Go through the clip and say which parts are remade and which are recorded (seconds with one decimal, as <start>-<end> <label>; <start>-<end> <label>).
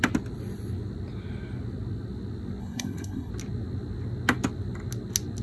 0.0-2.6 recorded; 2.6-3.3 remade; 3.3-5.4 recorded